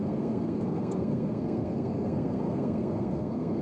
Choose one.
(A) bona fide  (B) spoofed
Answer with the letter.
B